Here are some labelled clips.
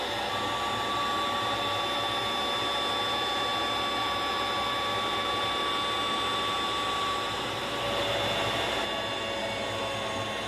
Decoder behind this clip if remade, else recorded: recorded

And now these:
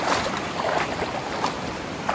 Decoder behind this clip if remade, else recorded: remade, vocoder, BigVGAN v2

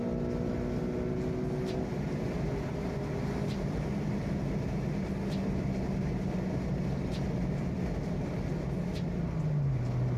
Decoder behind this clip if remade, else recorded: recorded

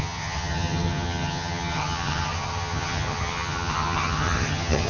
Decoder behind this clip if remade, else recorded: remade, vocoder, HiFi-GAN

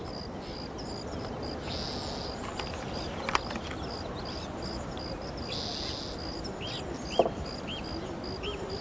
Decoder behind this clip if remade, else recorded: recorded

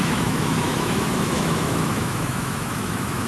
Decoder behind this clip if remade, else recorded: remade, autoencoder, DAC-VAE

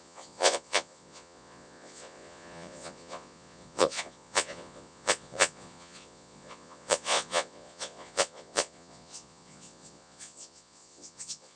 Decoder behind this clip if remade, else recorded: remade, vocoder, Vocos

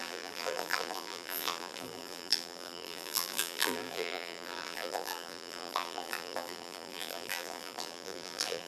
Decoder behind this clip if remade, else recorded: remade, vocoder, BigVGAN v2